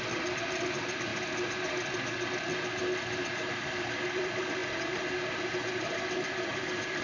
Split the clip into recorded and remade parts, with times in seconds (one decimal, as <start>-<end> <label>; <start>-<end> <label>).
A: 0.0-1.1 remade; 1.1-3.5 recorded; 3.5-7.0 remade